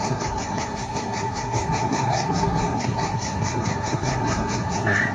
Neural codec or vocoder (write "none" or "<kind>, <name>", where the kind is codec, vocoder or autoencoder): codec, SNAC